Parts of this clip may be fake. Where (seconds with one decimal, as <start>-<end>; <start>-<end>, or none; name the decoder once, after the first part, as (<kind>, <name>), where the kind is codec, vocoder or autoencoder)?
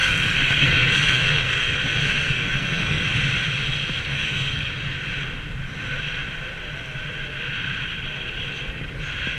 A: 0.0-3.1 (codec, SNAC); 4.1-4.7